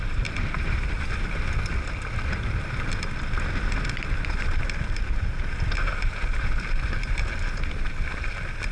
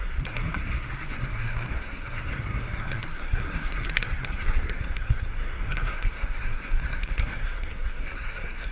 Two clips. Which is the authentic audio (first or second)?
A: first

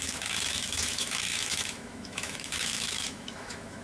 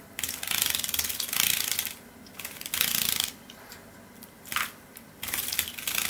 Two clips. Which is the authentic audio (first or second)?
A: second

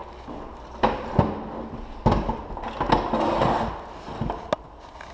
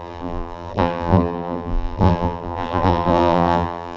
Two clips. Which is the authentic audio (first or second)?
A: first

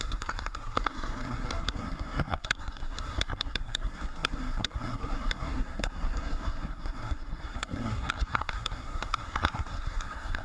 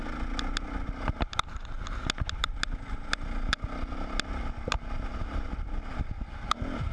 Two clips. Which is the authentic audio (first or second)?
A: second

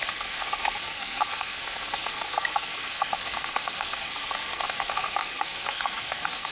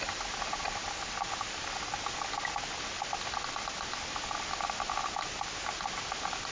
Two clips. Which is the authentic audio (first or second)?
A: second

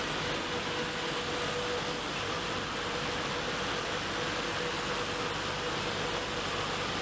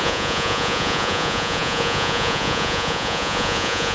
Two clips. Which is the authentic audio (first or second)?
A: first